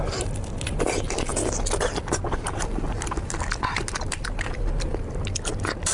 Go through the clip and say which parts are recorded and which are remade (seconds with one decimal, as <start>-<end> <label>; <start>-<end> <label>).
0.0-5.9 recorded